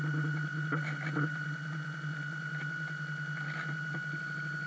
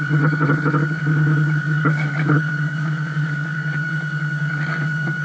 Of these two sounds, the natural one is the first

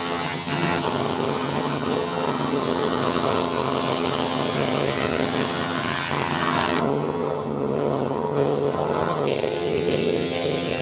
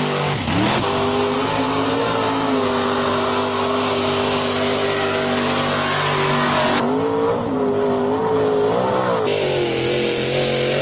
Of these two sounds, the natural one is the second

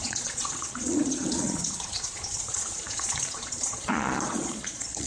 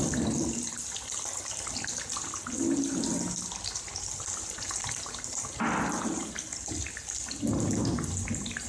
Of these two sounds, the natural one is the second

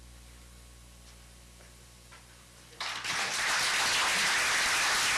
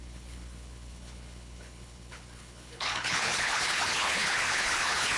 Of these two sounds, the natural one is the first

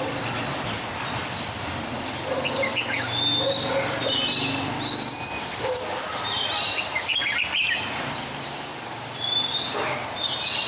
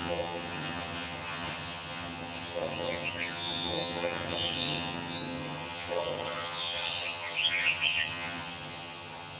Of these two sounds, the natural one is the first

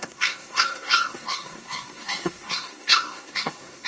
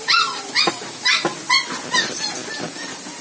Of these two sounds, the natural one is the second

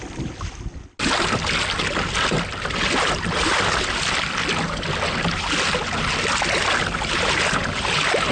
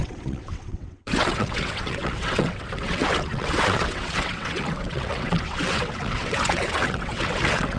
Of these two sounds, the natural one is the first